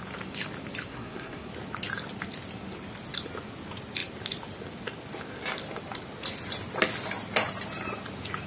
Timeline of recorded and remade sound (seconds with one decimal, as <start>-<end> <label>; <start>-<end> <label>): 0.0-0.9 recorded; 0.9-1.5 remade; 1.5-8.5 recorded